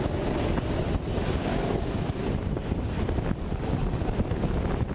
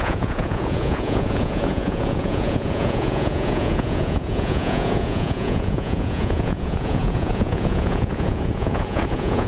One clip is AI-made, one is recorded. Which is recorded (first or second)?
first